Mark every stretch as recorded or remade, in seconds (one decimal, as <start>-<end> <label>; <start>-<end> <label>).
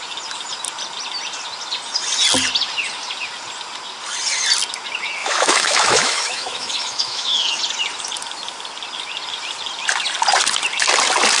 0.0-5.2 recorded; 5.2-7.6 remade; 7.6-11.4 recorded